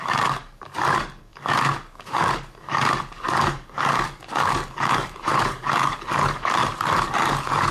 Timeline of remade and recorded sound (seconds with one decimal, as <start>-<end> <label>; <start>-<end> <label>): 0.0-7.7 remade